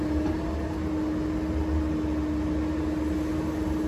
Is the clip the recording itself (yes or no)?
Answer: yes